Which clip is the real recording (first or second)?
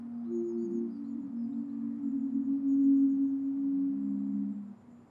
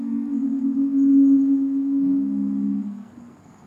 first